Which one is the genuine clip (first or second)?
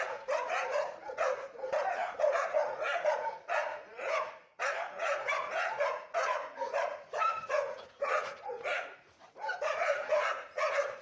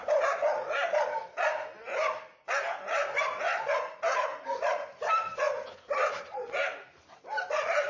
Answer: second